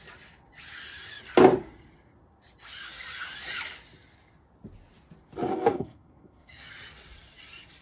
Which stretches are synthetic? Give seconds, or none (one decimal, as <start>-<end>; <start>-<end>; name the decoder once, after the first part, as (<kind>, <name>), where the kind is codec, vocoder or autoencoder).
5.5-6.7 (codec, SNAC)